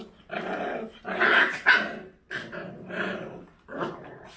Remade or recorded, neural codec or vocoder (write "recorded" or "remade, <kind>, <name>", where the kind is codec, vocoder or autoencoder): recorded